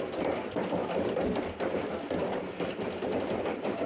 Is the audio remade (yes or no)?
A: no